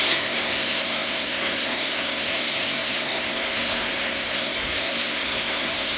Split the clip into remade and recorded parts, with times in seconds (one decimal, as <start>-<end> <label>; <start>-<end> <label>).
0.0-6.0 remade